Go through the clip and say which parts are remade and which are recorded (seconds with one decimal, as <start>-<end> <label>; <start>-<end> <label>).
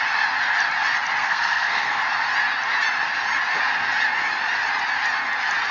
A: 0.0-1.2 recorded; 1.2-2.0 remade; 2.0-5.7 recorded